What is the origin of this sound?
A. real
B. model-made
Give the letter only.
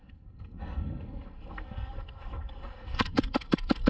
B